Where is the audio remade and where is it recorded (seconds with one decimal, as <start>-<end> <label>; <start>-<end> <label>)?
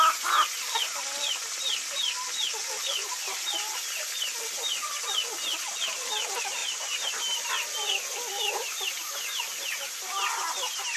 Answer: 0.0-11.0 recorded